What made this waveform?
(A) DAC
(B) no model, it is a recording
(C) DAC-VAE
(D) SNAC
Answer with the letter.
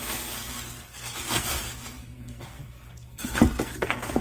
D